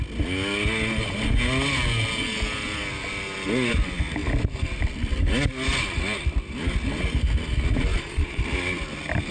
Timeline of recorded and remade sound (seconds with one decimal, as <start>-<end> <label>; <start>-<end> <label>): 0.0-7.9 recorded; 7.9-8.4 remade; 8.4-9.3 recorded